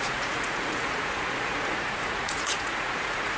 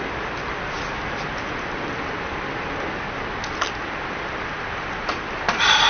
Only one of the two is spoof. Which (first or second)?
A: first